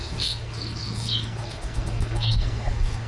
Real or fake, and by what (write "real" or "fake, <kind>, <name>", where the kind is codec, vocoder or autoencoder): fake, codec, SNAC